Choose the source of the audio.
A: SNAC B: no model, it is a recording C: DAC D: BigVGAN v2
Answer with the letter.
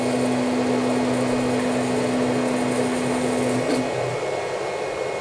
B